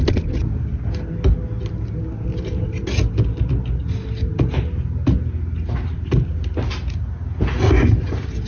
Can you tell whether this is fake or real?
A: real